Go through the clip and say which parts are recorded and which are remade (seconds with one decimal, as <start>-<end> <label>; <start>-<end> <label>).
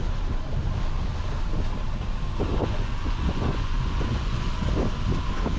0.0-2.5 recorded; 2.5-4.7 remade; 4.7-5.6 recorded